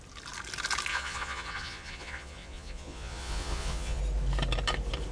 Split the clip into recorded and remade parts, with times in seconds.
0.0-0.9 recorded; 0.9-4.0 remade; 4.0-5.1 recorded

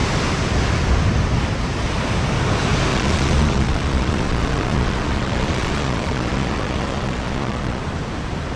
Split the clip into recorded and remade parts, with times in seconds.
0.0-2.9 recorded; 2.9-7.8 remade; 7.8-8.6 recorded

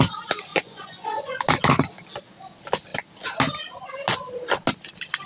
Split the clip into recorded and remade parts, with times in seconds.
0.0-0.5 recorded; 0.5-1.4 remade; 1.4-5.3 recorded

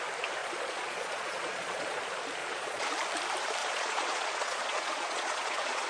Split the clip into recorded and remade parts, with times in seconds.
0.0-0.4 recorded; 0.4-2.0 remade; 2.0-2.4 recorded; 2.4-2.9 remade; 2.9-3.6 recorded; 3.6-5.9 remade